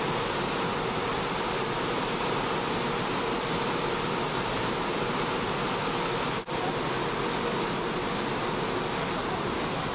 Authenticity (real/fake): real